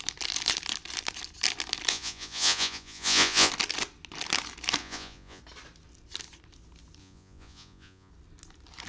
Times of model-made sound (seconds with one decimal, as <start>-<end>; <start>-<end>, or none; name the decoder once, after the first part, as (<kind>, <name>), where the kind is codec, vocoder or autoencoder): 1.9-3.5 (vocoder, Vocos); 4.8-5.4; 7.0-8.1